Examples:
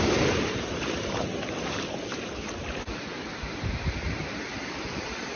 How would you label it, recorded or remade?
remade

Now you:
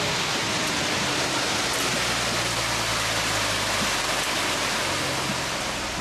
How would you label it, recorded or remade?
recorded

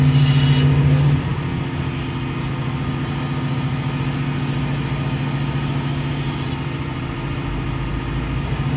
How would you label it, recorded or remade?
recorded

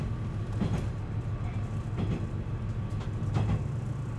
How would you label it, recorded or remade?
recorded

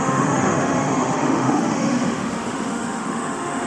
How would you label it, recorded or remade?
remade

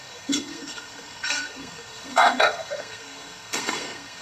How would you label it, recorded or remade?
remade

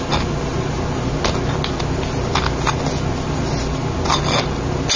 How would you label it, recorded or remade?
recorded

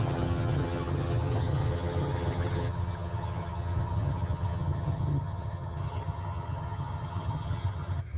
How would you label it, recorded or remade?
remade